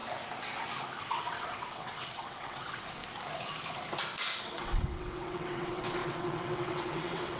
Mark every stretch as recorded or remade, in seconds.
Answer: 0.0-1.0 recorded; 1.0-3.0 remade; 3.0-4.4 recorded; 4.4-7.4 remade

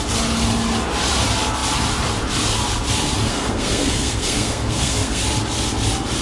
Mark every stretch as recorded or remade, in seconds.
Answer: 0.0-3.3 recorded; 3.3-5.2 remade; 5.2-6.2 recorded

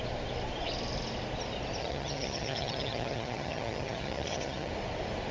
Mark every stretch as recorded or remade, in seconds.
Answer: 0.0-1.8 recorded; 1.8-4.7 remade; 4.7-5.3 recorded